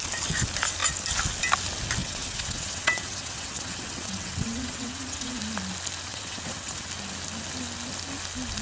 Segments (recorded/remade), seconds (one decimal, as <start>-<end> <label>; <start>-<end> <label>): 0.0-2.0 recorded; 2.0-5.4 remade; 5.4-6.1 recorded; 6.1-6.9 remade; 6.9-8.6 recorded